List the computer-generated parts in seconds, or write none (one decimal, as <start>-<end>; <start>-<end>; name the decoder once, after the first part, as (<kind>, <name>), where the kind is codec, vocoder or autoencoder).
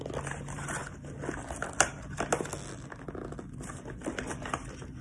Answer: none